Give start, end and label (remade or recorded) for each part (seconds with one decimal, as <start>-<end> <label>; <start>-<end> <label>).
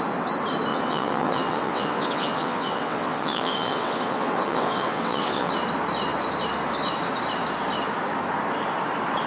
0.0-0.7 recorded; 0.7-5.5 remade; 5.5-9.3 recorded